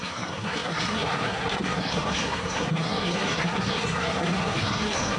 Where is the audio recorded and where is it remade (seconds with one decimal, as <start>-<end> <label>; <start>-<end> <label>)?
0.0-5.2 remade